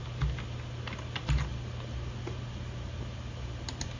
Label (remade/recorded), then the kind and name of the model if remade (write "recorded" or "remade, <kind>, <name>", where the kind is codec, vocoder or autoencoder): recorded